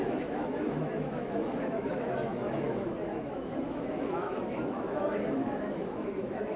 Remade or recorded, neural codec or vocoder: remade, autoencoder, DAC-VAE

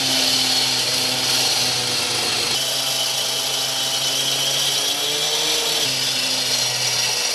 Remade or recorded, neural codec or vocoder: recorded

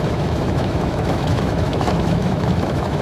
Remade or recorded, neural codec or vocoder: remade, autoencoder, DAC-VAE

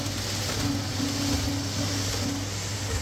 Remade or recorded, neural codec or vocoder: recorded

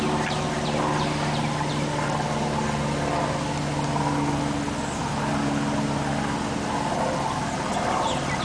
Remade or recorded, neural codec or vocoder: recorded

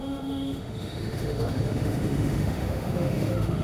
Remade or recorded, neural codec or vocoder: remade, autoencoder, DAC-VAE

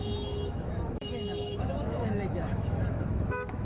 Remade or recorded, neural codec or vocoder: remade, autoencoder, DAC-VAE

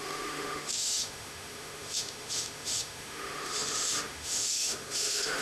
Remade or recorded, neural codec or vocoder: remade, autoencoder, DAC-VAE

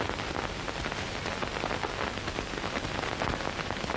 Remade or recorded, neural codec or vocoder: recorded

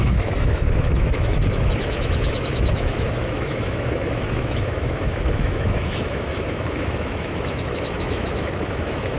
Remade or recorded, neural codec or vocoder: remade, autoencoder, DAC-VAE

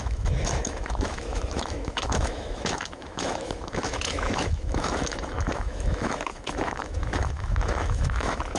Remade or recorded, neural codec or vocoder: remade, autoencoder, DAC-VAE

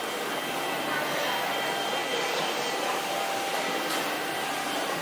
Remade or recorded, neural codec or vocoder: recorded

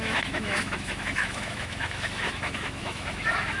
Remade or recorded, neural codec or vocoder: remade, autoencoder, DAC-VAE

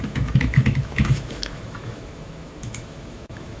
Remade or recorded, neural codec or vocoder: remade, autoencoder, DAC-VAE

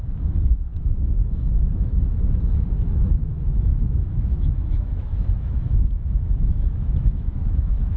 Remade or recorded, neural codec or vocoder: remade, autoencoder, DAC-VAE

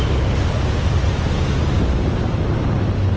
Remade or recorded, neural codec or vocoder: recorded